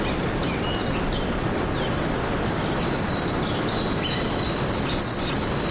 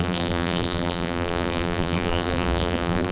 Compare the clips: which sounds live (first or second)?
first